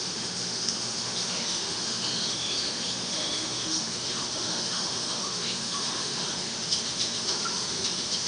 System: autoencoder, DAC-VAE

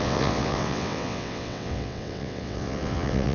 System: vocoder, WaveNeXt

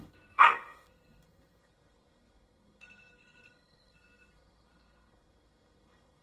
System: codec, SNAC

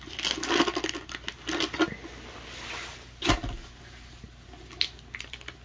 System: none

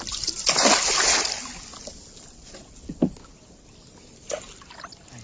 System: none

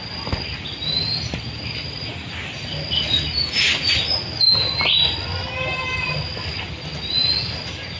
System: none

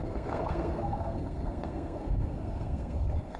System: codec, SNAC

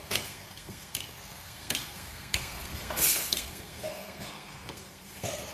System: codec, SNAC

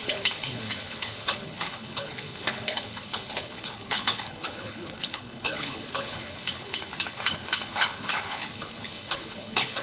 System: codec, HILCodec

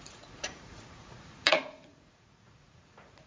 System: vocoder, Vocos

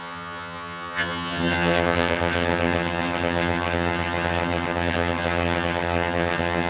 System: vocoder, HiFi-GAN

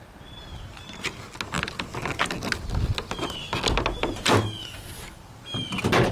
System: none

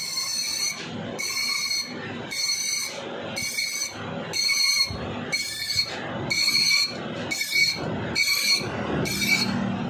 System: none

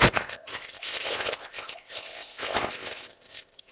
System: codec, ZipCodec